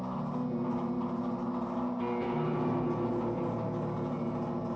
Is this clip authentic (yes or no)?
yes